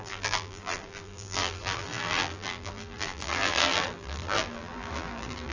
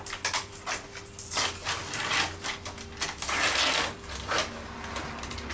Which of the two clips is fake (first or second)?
first